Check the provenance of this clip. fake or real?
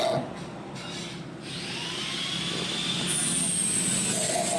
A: real